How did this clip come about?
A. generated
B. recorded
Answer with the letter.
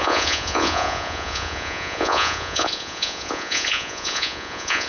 A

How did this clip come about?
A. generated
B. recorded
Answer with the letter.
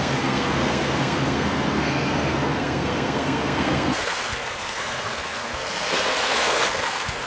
A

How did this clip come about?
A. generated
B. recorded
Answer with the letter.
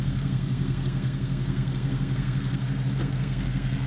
A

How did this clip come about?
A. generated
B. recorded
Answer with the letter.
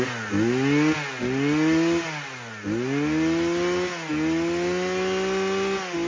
B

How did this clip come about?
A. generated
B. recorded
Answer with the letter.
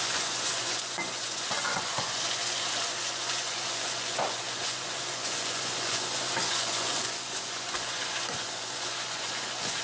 A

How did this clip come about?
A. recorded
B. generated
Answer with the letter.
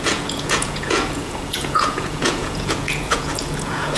B